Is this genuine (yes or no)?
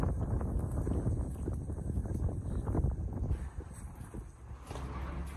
yes